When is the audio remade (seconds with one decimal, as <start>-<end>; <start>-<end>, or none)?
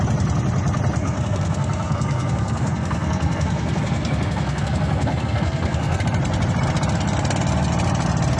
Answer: 1.0-6.0